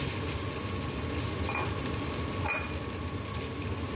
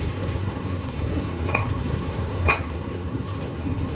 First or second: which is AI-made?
second